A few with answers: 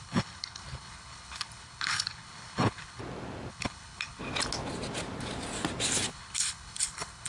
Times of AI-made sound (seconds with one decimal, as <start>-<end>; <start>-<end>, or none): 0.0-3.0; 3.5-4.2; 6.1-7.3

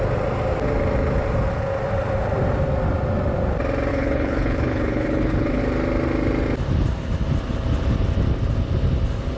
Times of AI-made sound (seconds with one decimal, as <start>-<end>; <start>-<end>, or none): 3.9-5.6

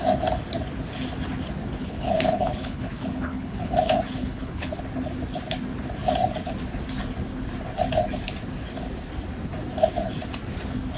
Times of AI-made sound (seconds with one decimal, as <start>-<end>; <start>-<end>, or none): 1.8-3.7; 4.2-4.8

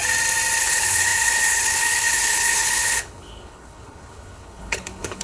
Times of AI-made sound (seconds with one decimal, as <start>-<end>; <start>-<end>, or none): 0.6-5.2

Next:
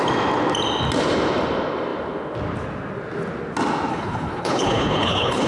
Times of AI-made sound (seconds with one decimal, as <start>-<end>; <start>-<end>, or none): 3.9-5.5

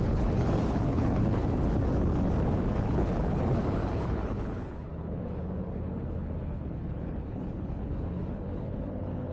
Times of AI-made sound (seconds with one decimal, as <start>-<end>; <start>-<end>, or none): 0.0-1.4; 2.8-9.3